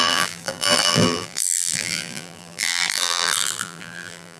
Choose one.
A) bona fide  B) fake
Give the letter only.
B